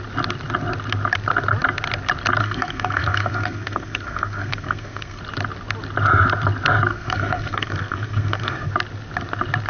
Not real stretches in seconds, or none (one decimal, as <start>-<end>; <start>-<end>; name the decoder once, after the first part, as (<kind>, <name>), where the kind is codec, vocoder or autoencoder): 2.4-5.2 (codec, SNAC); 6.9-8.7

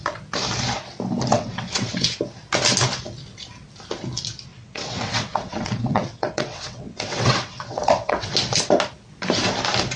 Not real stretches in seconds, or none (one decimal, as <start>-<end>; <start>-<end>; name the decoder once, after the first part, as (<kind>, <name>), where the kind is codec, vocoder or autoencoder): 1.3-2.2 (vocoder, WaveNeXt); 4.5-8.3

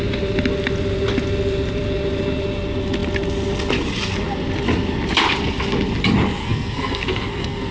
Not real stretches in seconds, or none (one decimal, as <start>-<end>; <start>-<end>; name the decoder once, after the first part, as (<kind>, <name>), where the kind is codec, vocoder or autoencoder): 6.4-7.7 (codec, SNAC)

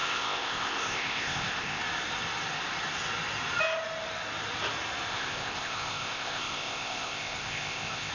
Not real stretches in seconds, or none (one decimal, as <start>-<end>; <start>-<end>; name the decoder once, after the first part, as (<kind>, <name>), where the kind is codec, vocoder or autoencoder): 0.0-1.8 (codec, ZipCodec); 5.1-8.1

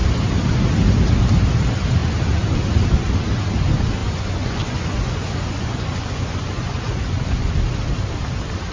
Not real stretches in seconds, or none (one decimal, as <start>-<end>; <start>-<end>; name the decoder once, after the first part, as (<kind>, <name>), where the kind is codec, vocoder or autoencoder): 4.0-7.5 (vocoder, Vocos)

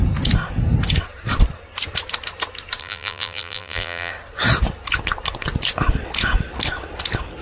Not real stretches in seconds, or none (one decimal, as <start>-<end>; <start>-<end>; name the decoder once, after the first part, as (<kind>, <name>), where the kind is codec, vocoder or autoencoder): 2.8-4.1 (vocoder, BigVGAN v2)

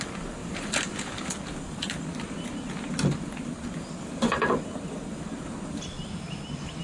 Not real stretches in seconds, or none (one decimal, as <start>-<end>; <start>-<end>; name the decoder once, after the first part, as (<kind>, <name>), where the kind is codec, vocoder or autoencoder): 0.4-1.3 (vocoder, BigVGAN v2)

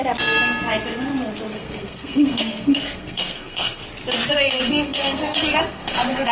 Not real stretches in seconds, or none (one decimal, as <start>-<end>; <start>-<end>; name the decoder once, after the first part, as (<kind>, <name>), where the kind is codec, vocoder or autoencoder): 1.5-3.8 (codec, SNAC); 4.3-6.3